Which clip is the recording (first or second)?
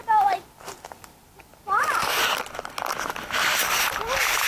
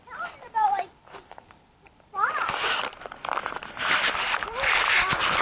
first